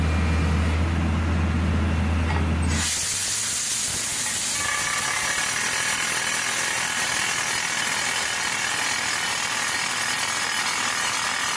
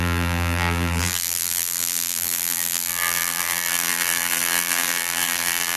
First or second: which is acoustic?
first